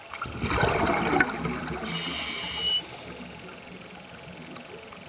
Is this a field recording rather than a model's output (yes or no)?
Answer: yes